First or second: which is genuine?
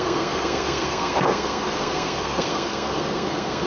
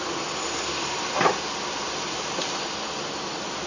second